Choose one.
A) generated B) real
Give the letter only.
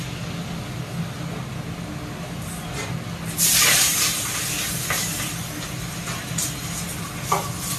B